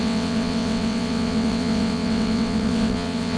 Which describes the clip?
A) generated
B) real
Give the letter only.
A